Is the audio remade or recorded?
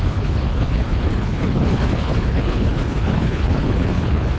remade